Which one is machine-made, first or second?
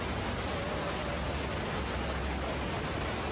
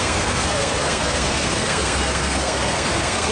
second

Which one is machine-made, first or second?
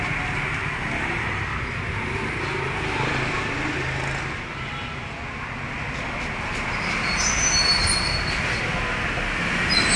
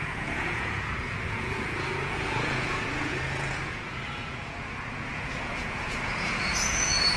second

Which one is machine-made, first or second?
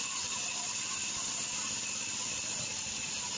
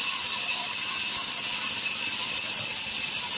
first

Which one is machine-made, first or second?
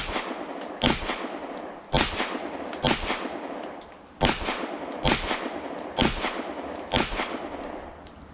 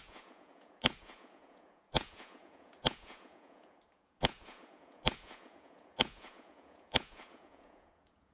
second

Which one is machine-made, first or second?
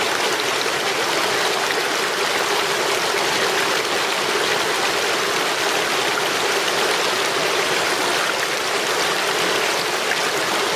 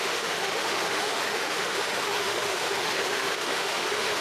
second